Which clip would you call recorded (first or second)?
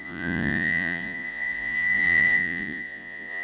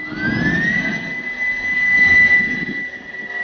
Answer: second